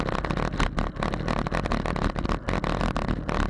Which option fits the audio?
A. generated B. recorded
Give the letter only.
B